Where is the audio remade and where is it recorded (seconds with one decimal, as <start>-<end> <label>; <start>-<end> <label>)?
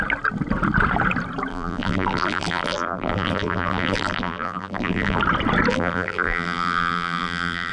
0.0-1.5 recorded; 1.5-5.2 remade; 5.2-5.7 recorded; 5.7-7.7 remade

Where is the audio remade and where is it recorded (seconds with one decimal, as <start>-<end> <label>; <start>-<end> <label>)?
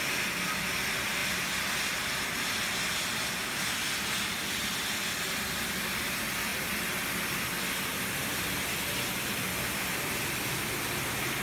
0.0-11.4 recorded